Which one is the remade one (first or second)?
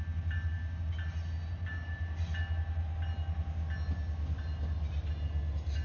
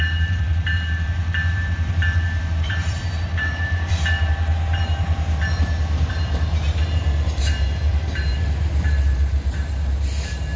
second